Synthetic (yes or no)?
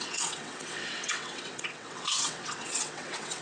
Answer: yes